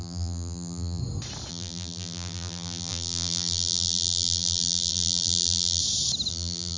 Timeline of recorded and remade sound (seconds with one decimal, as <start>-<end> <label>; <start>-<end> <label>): 0.0-1.0 remade; 1.0-1.5 recorded; 1.5-5.8 remade; 5.8-6.3 recorded; 6.3-6.8 remade